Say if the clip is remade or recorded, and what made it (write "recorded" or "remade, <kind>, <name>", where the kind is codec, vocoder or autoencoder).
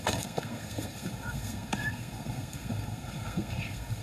remade, codec, SNAC